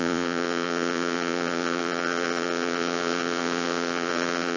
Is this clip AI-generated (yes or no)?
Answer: yes